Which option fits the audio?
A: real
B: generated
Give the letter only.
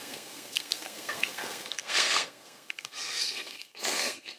B